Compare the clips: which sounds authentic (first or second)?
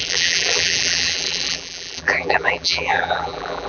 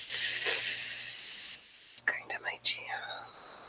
second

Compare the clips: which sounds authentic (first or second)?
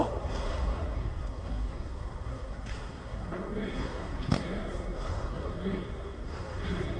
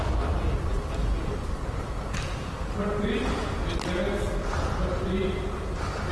second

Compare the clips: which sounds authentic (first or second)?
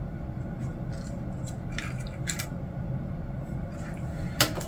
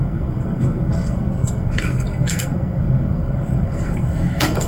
first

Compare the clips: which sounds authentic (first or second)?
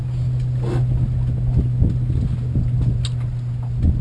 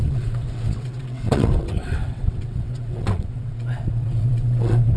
first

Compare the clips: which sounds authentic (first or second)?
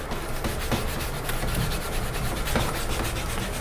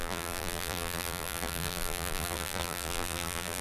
first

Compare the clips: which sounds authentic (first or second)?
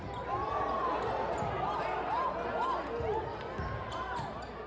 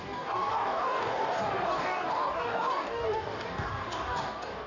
first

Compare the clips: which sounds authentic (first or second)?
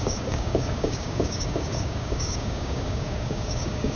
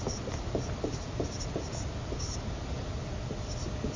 second